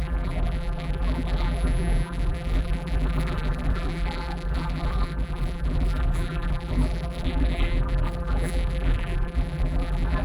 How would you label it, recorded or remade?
remade